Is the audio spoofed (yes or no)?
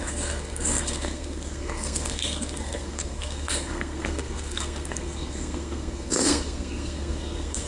yes